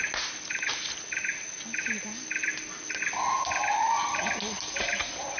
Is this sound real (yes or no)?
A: yes